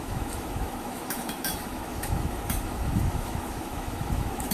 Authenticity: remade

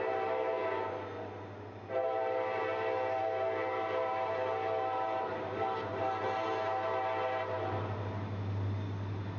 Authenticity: recorded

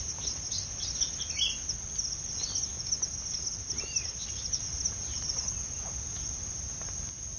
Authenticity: recorded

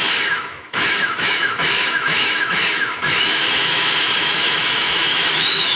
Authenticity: remade